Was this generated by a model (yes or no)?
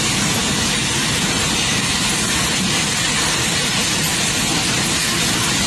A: no